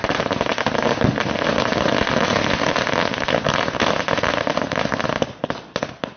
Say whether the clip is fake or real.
real